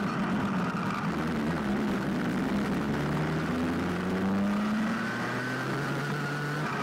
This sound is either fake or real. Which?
real